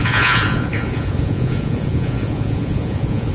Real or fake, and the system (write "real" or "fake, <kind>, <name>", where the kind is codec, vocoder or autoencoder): fake, vocoder, Vocos